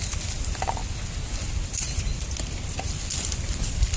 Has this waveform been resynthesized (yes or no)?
no